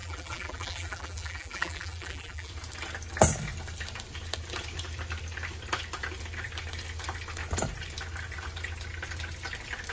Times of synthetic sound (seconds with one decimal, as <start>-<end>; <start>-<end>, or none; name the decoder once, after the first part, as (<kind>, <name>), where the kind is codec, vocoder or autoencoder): 0.0-2.5 (vocoder, BigVGAN v2)